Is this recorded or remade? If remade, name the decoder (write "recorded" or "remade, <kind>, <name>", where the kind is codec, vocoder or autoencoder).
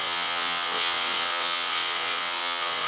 remade, vocoder, WaveNeXt